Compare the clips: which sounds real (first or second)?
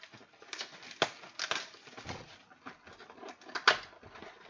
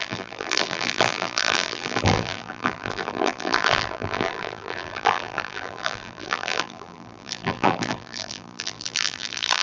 first